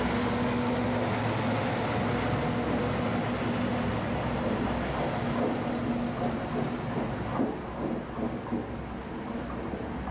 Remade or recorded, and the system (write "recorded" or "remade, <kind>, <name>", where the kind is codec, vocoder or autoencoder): recorded